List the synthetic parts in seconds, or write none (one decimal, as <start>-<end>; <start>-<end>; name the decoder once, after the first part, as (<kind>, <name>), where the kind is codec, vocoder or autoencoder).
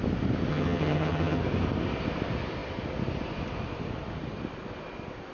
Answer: 0.5-1.4 (vocoder, HiFi-GAN)